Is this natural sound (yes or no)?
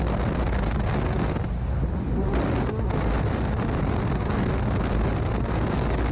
yes